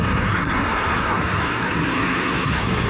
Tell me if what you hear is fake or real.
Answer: fake